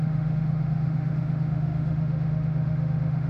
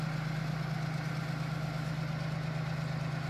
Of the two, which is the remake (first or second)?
first